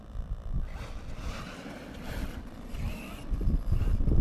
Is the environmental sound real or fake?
fake